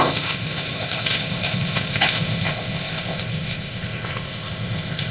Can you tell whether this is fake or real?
fake